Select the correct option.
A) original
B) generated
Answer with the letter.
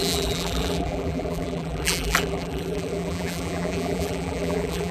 B